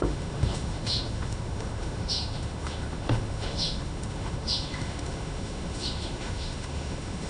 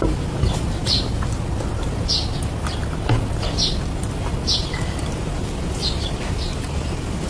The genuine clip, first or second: second